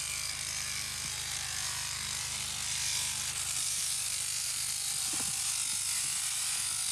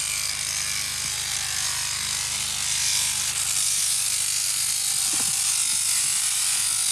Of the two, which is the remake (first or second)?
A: first